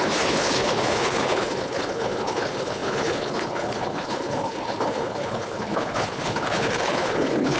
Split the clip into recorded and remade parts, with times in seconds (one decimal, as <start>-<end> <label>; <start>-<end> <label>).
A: 0.0-7.6 remade